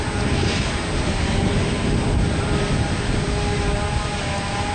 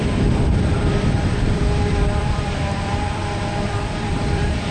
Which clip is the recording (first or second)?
first